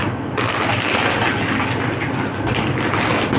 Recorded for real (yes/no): yes